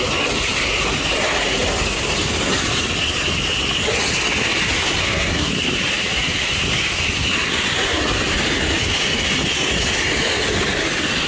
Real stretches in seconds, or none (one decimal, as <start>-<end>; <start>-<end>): 0.0-5.0; 5.5-11.3